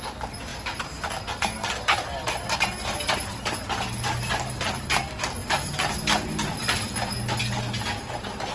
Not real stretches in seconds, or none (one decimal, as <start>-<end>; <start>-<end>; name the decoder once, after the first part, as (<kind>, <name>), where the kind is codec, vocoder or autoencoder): none